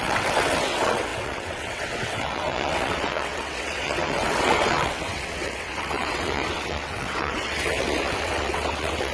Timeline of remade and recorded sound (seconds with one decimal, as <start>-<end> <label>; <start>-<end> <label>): 0.0-9.1 remade